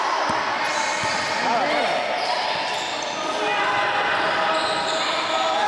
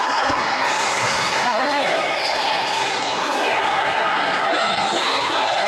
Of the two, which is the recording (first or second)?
first